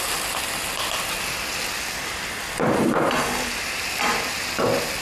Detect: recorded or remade recorded